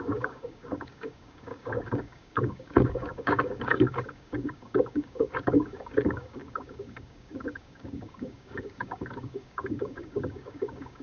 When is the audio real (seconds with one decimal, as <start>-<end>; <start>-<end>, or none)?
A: none